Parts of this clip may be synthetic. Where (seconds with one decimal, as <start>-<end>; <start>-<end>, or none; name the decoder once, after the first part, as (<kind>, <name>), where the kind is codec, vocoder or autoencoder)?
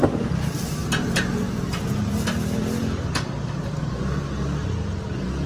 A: 2.6-3.5 (vocoder, BigVGAN v2)